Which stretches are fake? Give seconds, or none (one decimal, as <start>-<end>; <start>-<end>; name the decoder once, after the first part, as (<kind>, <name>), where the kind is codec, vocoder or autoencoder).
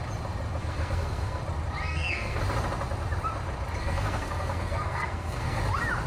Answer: 0.6-1.4 (codec, SNAC); 1.8-2.4; 3.8-5.6